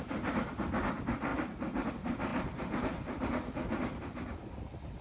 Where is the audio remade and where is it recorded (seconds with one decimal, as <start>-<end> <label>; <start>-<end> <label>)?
0.0-5.0 recorded